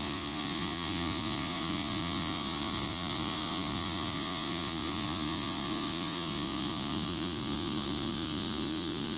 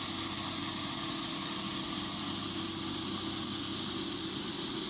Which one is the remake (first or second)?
first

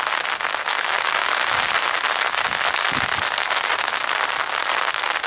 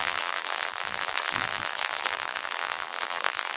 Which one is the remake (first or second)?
second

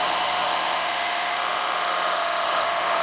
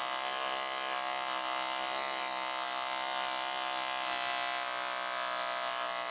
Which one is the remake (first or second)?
first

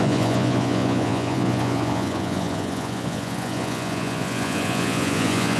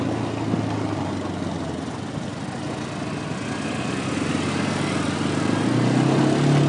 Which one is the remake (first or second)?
first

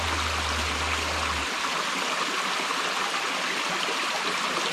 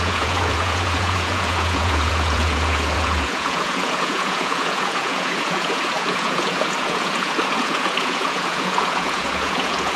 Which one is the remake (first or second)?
second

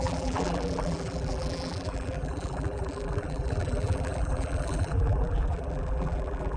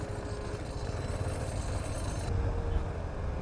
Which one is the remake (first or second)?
first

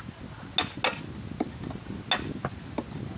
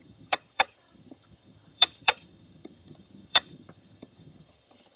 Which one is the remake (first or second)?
second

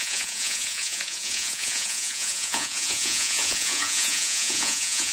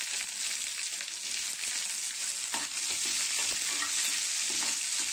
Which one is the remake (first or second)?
first